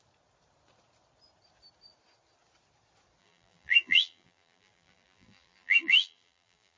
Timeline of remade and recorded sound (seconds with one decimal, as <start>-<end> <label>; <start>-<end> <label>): 0.0-3.2 recorded; 3.2-6.8 remade